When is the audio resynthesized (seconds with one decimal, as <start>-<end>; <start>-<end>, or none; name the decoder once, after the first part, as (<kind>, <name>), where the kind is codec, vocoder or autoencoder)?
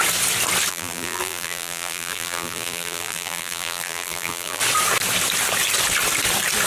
0.7-4.6 (vocoder, BigVGAN v2)